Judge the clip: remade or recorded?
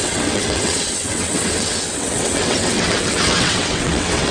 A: remade